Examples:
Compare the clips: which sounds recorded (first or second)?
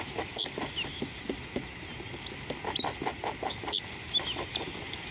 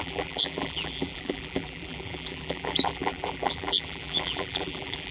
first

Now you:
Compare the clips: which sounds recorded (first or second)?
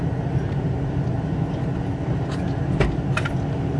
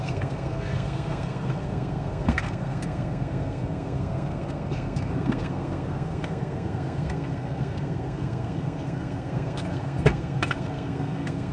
first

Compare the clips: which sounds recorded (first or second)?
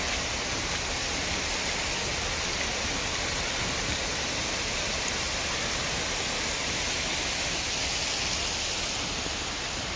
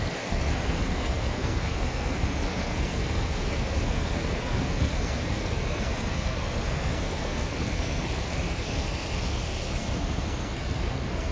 first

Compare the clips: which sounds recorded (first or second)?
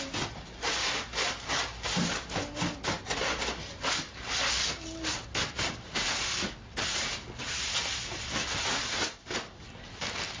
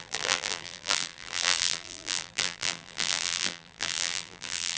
first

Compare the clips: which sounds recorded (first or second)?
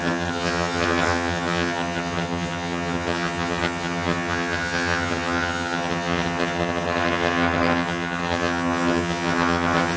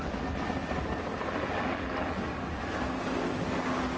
second